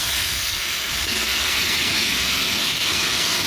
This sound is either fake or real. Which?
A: fake